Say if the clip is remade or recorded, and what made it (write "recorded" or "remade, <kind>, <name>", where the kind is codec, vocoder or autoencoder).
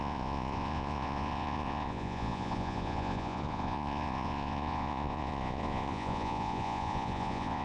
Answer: remade, vocoder, Vocos